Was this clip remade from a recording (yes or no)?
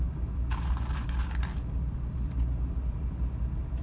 no